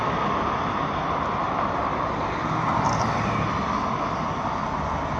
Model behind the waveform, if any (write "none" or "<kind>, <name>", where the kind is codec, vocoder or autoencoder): none